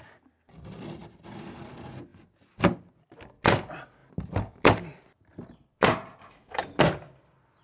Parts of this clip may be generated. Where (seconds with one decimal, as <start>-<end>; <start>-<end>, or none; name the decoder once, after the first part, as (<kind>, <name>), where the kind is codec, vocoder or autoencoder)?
6.2-6.8 (autoencoder, DAC-VAE)